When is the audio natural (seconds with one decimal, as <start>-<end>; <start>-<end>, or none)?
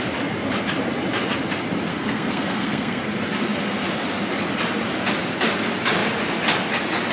0.0-1.9; 3.0-7.1